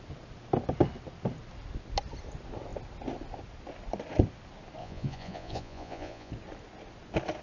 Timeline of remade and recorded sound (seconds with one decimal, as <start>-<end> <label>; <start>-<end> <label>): 0.0-4.8 recorded; 4.8-6.3 remade; 6.3-7.4 recorded